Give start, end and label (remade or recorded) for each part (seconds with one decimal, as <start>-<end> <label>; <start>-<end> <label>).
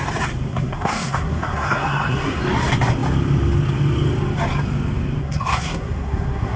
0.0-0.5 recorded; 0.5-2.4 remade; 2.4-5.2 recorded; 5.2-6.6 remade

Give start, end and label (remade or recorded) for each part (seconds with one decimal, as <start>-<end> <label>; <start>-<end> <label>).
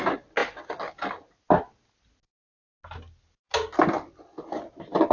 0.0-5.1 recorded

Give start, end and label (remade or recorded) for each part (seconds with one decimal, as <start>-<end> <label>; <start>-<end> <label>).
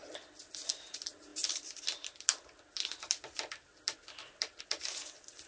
0.0-5.5 recorded